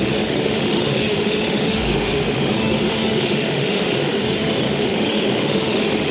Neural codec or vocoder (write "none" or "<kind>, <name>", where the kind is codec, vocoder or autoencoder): autoencoder, DAC-VAE